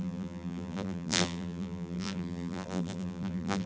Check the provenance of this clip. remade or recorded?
remade